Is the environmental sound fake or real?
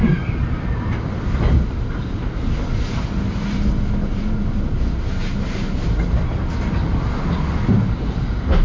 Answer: real